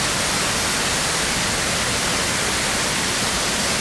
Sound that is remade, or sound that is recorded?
recorded